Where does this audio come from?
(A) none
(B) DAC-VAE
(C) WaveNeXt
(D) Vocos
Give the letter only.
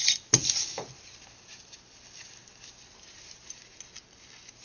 A